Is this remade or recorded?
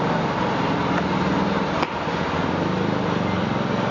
recorded